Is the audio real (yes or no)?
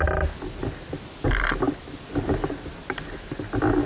yes